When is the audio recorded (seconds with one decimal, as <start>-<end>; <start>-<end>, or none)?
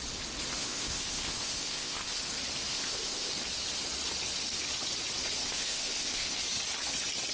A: 0.0-0.6; 2.2-2.7; 3.3-5.4; 6.4-7.3